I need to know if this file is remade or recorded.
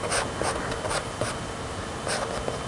recorded